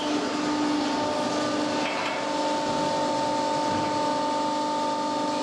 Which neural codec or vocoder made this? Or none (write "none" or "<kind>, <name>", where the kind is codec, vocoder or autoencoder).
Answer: none